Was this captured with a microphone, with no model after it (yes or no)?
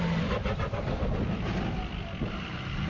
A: yes